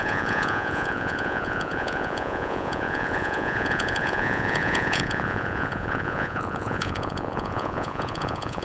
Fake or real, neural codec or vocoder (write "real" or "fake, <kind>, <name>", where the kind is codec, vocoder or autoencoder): fake, vocoder, Vocos